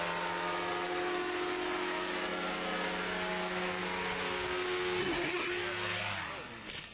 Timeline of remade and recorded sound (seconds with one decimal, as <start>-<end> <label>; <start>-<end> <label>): 0.0-5.0 recorded; 5.0-5.5 remade; 5.5-6.9 recorded